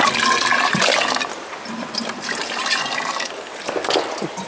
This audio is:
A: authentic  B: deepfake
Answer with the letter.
A